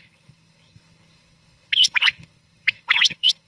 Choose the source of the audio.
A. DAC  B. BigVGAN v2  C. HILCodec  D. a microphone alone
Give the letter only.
C